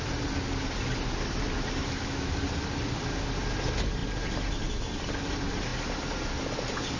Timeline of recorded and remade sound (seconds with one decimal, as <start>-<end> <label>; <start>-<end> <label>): 0.0-1.8 recorded; 1.8-2.4 remade; 2.4-7.0 recorded